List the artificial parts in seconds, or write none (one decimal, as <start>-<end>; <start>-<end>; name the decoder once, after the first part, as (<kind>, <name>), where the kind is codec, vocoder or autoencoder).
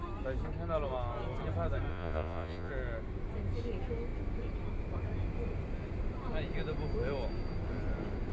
1.9-2.7 (vocoder, Vocos)